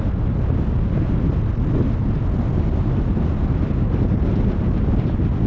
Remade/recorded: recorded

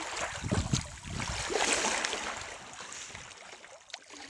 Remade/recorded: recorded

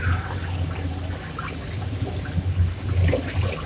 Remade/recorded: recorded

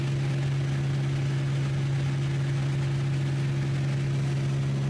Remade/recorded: recorded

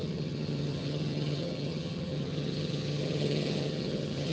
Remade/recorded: remade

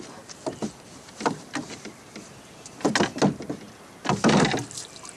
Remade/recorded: recorded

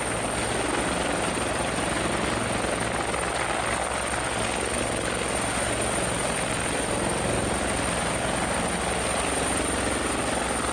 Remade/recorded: recorded